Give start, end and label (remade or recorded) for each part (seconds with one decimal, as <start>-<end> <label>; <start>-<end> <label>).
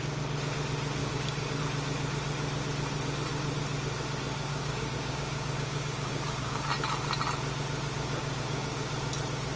0.0-1.0 recorded; 1.0-1.6 remade; 1.6-4.5 recorded; 4.5-6.7 remade; 6.7-8.2 recorded; 8.2-8.9 remade; 8.9-9.6 recorded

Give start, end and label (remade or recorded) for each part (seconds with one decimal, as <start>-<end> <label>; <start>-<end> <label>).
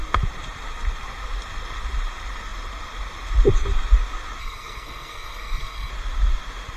0.0-4.4 recorded; 4.4-5.9 remade; 5.9-6.8 recorded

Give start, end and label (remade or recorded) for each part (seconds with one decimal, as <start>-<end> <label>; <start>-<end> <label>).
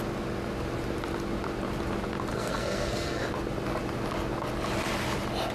0.0-2.3 recorded; 2.3-3.2 remade; 3.2-5.5 recorded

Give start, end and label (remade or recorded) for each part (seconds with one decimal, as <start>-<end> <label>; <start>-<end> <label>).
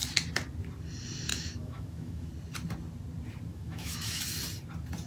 0.0-1.3 recorded; 1.3-2.3 remade; 2.3-3.5 recorded; 3.5-4.2 remade; 4.2-5.1 recorded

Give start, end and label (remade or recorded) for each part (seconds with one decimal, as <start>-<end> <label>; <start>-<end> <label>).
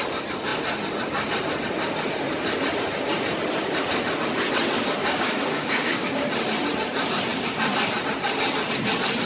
0.0-5.0 recorded; 5.0-6.1 remade; 6.1-9.3 recorded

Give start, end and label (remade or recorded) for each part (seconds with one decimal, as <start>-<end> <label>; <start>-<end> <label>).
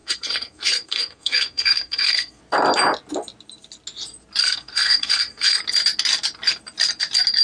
0.0-2.4 remade; 2.4-4.4 recorded; 4.4-5.6 remade; 5.6-7.4 recorded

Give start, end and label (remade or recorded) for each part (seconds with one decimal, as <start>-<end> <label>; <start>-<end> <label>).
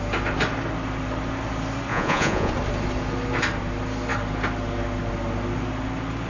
0.0-1.9 recorded; 1.9-2.5 remade; 2.5-6.3 recorded